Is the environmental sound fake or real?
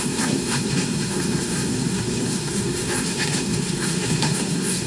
fake